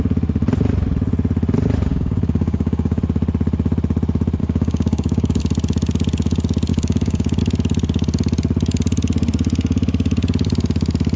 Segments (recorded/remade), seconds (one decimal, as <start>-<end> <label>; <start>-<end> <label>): 0.0-1.9 recorded; 1.9-3.0 remade; 3.0-4.4 recorded; 4.4-5.4 remade; 5.4-6.7 recorded; 6.7-7.4 remade; 7.4-11.2 recorded